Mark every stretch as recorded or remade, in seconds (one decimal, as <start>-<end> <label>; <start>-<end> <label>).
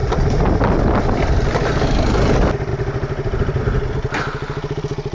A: 0.0-1.3 remade; 1.3-2.7 recorded; 2.7-3.6 remade; 3.6-5.1 recorded